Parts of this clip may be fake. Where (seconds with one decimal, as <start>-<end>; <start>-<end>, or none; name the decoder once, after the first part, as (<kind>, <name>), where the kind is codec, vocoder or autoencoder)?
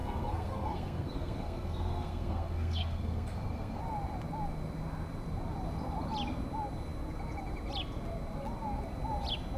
0.0-3.8 (codec, SNAC)